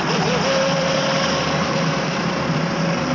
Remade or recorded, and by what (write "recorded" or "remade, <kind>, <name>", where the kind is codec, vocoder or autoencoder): remade, vocoder, BigVGAN v2